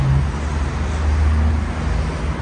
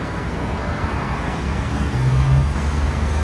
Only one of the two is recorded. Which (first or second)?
first